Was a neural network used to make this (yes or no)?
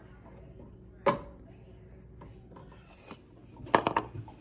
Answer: no